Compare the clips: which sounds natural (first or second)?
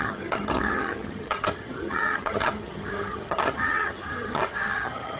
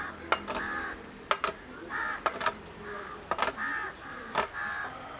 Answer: second